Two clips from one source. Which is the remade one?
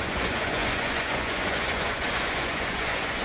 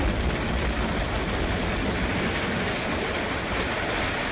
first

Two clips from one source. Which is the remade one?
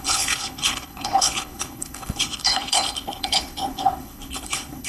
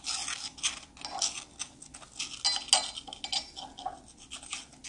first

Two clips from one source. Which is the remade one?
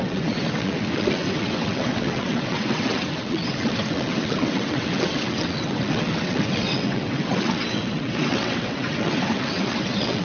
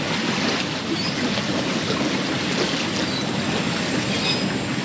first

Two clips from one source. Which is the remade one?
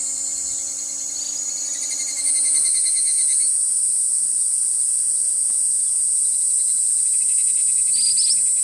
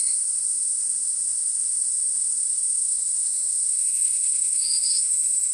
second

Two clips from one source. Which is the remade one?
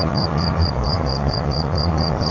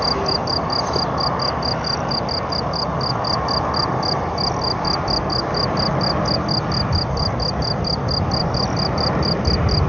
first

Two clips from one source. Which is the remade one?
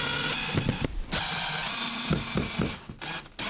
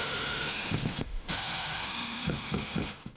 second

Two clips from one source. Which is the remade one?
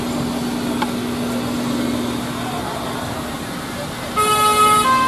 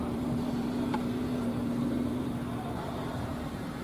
second